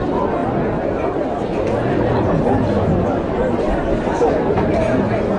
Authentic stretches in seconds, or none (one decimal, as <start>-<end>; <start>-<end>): 0.0-5.4